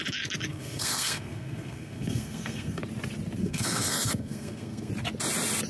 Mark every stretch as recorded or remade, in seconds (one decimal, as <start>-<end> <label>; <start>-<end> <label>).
0.0-0.5 recorded; 0.5-2.8 remade; 2.8-3.4 recorded; 3.4-4.9 remade; 4.9-5.7 recorded